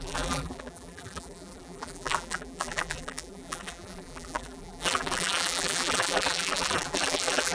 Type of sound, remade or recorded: remade